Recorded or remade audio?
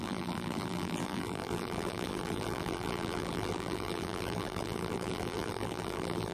remade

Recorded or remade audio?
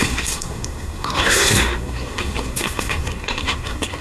remade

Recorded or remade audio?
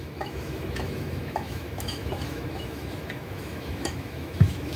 remade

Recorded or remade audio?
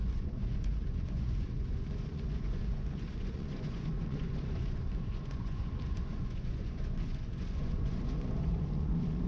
remade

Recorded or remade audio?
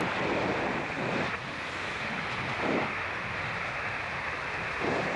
recorded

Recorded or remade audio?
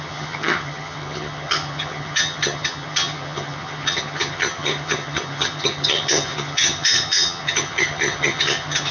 remade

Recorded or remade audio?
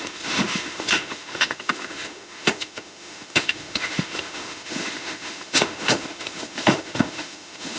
remade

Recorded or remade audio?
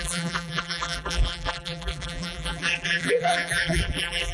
remade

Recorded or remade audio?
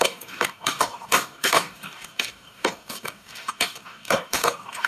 remade